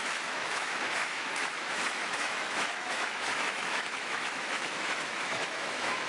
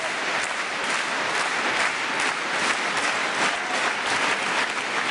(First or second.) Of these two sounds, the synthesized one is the first